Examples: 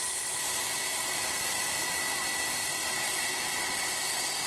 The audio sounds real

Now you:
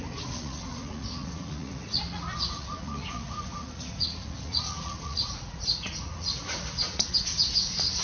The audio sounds fake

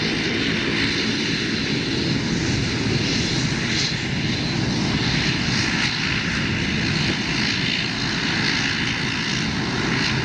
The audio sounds real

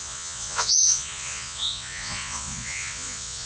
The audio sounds fake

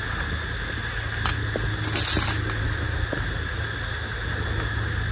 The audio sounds real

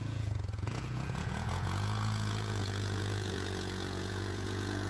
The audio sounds fake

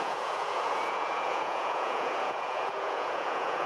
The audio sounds fake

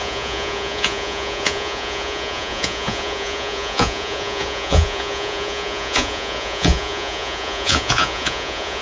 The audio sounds fake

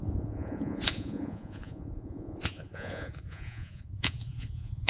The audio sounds fake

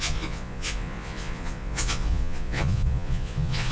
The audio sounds fake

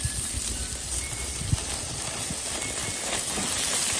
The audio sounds real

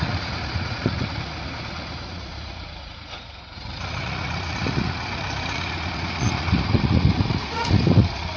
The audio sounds fake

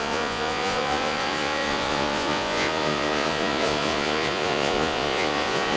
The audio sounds fake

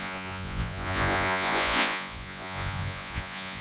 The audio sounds fake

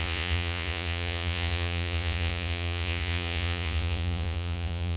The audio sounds fake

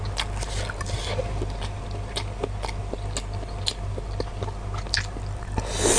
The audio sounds real